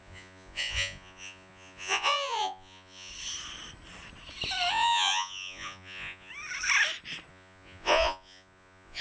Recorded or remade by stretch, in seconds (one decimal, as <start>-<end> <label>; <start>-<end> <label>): 0.0-3.1 remade; 3.1-4.7 recorded; 4.7-6.3 remade; 6.3-7.3 recorded; 7.3-9.0 remade